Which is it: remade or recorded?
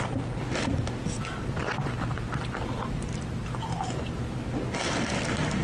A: recorded